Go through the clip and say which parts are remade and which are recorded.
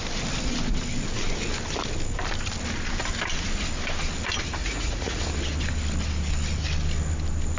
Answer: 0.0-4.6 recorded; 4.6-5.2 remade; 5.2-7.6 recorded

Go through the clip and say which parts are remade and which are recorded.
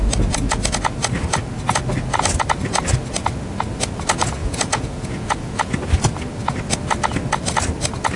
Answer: 0.0-4.4 recorded; 4.4-5.7 remade; 5.7-8.2 recorded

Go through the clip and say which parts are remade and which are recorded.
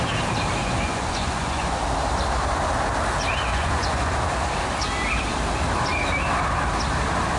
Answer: 0.0-0.6 recorded; 0.6-1.8 remade; 1.8-3.5 recorded; 3.5-4.2 remade; 4.2-7.4 recorded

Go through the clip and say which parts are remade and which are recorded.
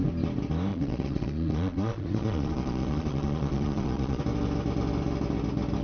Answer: 0.0-0.7 recorded; 0.7-4.2 remade; 4.2-5.8 recorded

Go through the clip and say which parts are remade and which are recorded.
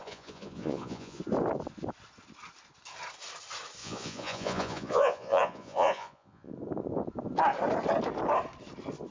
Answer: 0.0-1.2 remade; 1.2-3.8 recorded; 3.8-6.5 remade; 6.5-9.1 recorded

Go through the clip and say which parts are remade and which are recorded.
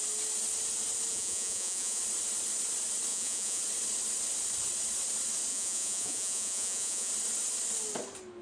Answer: 0.0-1.1 recorded; 1.1-2.0 remade; 2.0-3.1 recorded; 3.1-3.6 remade; 3.6-5.5 recorded; 5.5-7.1 remade; 7.1-8.4 recorded